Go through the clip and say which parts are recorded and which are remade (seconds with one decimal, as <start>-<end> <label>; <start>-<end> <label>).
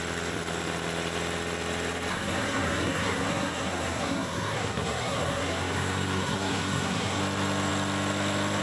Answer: 0.0-2.1 recorded; 2.1-7.2 remade; 7.2-8.6 recorded